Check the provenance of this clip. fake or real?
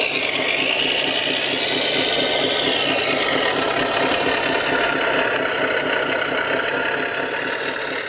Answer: real